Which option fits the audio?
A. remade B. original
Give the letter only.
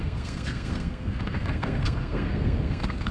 A